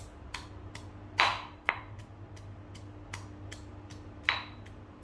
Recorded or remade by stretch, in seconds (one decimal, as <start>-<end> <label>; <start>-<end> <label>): 0.0-5.0 recorded

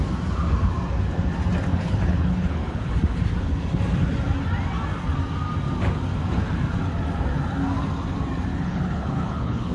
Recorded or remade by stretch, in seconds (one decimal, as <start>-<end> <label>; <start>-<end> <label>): 0.0-1.7 recorded; 1.7-2.9 remade; 2.9-8.5 recorded; 8.5-9.7 remade

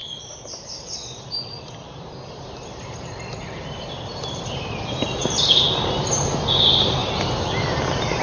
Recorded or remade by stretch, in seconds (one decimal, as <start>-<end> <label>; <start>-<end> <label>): 0.0-4.7 remade; 4.7-7.0 recorded; 7.0-8.2 remade

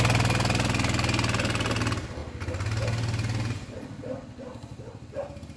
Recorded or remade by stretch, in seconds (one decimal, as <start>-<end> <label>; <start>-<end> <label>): 0.0-5.6 recorded

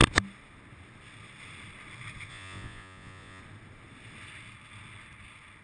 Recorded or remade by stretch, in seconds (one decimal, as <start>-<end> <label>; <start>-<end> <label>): 0.0-2.3 recorded; 2.3-3.4 remade; 3.4-5.6 recorded

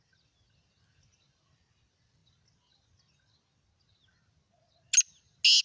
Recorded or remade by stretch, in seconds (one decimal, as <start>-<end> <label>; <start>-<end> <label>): 0.0-5.6 recorded

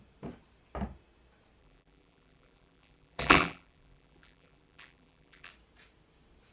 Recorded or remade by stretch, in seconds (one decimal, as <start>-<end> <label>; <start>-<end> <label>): 0.0-1.6 recorded; 1.6-5.5 remade; 5.5-6.5 recorded

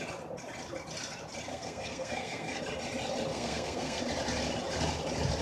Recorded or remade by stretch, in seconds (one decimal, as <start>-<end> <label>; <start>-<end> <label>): 0.0-1.5 recorded; 1.5-2.6 remade; 2.6-3.3 recorded; 3.3-4.0 remade; 4.0-5.4 recorded